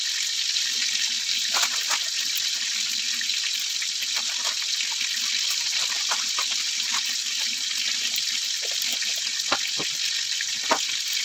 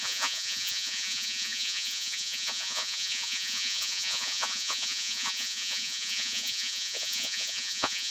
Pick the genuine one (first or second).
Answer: first